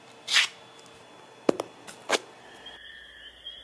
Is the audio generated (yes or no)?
no